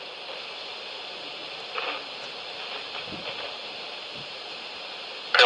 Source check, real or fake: real